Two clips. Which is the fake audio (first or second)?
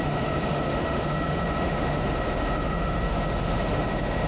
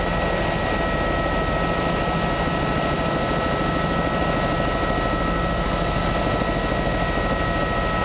first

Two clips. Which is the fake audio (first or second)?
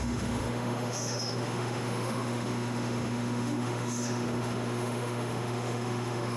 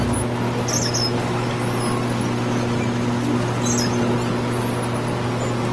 first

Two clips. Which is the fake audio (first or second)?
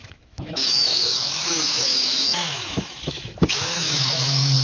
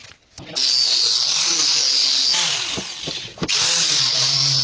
first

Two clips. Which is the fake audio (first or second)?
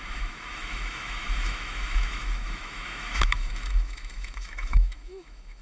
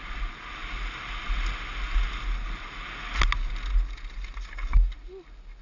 first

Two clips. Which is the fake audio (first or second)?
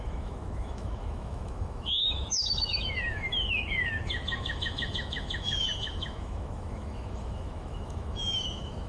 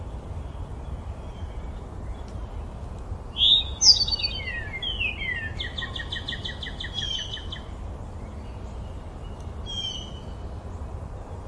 first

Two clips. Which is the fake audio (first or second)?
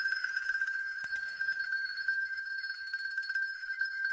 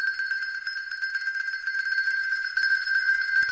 first